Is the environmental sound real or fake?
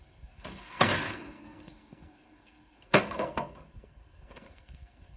fake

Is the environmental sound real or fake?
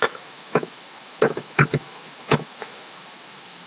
fake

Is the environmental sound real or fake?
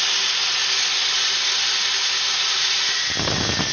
real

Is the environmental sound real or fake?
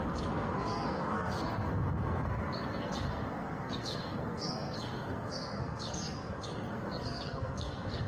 fake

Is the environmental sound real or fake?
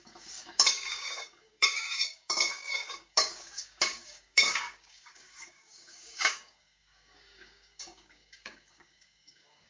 fake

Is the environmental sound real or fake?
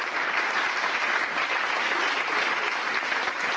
real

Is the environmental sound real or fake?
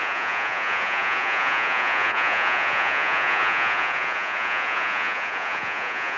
fake